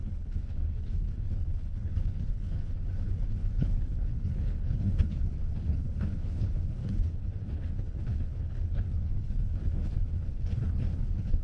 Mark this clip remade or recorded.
remade